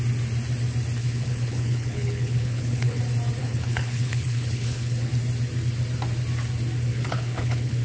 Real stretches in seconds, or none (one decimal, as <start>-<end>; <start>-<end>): 0.0-1.0; 3.0-3.4; 5.1-6.9